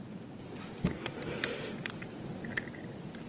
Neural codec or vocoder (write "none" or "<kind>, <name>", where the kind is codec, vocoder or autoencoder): none